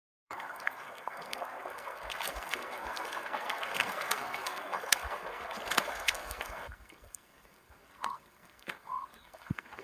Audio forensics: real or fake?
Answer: fake